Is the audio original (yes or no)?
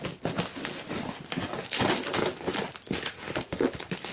yes